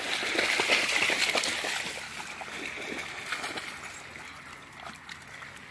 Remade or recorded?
recorded